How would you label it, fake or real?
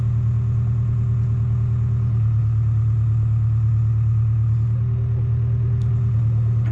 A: real